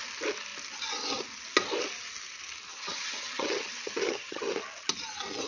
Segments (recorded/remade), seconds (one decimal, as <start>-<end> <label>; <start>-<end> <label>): 0.0-2.7 recorded; 2.7-4.5 remade; 4.5-5.5 recorded